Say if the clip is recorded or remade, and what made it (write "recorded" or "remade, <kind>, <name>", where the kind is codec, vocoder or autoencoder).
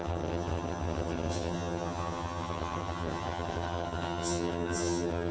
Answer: remade, vocoder, HiFi-GAN